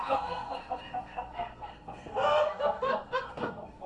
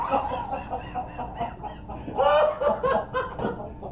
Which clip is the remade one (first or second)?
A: first